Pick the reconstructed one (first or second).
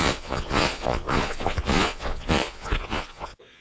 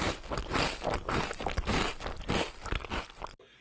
first